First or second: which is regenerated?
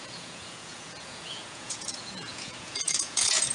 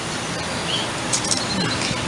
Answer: first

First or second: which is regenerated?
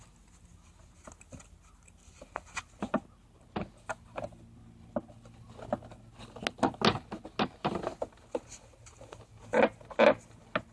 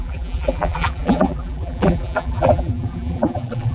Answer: second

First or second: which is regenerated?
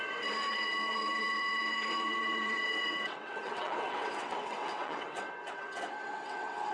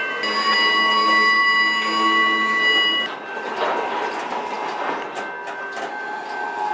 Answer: first